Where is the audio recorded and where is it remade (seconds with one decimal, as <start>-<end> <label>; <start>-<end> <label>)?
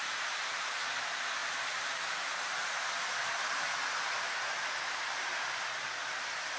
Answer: 0.0-1.4 recorded; 1.4-5.4 remade; 5.4-6.6 recorded